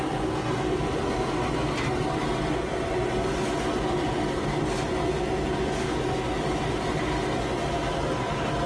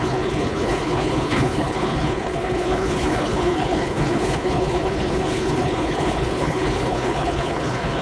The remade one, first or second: second